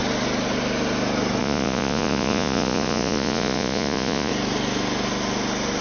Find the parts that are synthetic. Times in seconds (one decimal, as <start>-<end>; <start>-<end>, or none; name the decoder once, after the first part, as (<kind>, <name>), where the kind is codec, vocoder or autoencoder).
1.4-4.3 (vocoder, Vocos)